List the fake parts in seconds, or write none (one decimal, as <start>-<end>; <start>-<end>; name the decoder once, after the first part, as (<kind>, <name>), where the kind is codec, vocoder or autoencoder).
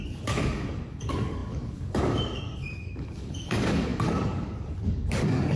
0.0-5.6 (codec, DAC)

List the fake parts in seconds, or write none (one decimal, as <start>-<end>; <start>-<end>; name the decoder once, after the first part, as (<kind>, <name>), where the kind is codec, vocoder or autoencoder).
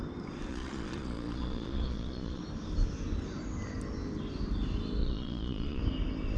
0.5-2.4 (vocoder, Vocos); 5.0-5.8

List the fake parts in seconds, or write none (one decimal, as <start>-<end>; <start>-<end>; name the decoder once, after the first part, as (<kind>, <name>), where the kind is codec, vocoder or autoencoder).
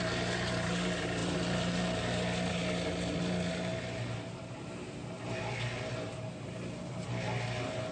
none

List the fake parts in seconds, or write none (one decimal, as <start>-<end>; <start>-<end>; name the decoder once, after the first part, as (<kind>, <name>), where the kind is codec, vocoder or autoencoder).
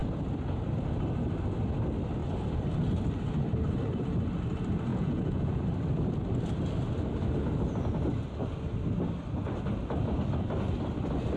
4.9-5.6 (vocoder, Vocos)